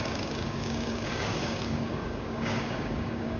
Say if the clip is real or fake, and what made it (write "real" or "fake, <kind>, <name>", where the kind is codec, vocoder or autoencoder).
fake, codec, DAC